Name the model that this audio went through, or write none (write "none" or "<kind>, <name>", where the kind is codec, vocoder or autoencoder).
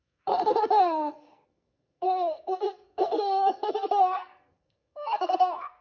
codec, SNAC